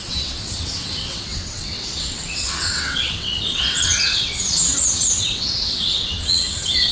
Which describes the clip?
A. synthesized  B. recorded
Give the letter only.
A